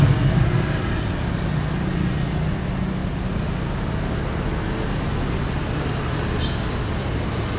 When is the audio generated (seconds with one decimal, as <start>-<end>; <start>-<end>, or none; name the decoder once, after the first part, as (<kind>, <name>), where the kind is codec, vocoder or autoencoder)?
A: none